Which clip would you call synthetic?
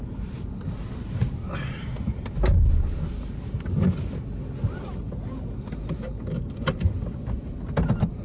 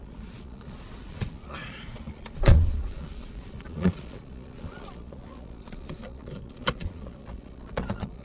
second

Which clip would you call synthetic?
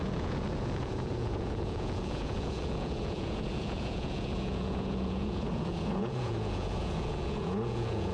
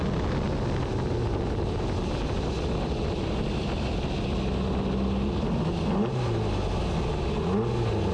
first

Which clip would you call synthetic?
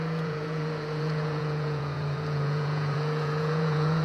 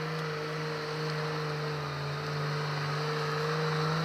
first